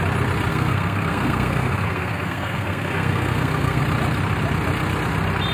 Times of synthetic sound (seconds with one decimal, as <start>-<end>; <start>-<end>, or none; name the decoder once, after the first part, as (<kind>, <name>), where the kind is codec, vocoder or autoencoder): 0.5-3.8 (codec, SNAC)